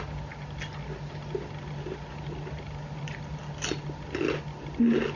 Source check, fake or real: real